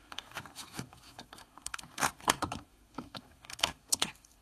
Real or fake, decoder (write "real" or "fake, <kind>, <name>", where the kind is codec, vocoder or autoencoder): fake, codec, SNAC